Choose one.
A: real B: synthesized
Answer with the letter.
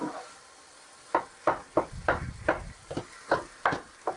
A